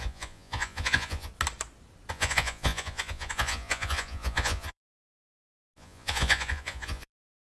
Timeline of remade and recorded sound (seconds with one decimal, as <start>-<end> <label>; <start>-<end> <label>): 0.0-1.3 remade; 1.3-2.1 recorded; 2.1-7.5 remade